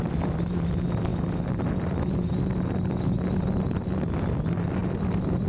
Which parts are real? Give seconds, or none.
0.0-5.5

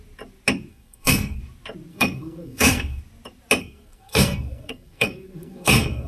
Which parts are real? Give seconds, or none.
0.0-0.7; 1.4-1.9; 3.0-3.6

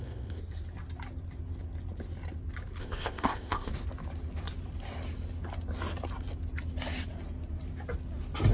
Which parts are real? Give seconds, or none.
0.4-2.8; 3.7-8.5

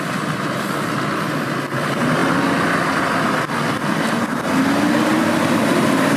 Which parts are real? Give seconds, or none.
0.0-6.2

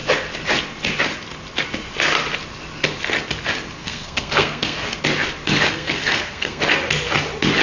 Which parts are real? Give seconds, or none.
0.0-3.8; 5.0-5.7; 6.6-7.6

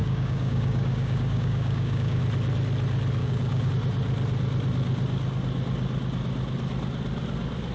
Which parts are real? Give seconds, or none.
2.2-3.2; 3.7-7.7

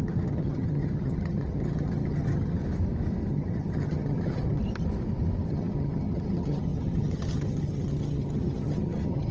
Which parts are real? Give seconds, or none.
2.6-3.3; 4.6-5.5

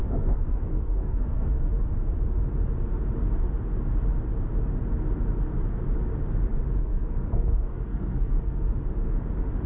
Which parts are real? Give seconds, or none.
1.5-6.8; 8.7-9.7